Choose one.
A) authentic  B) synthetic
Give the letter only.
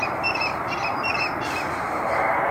B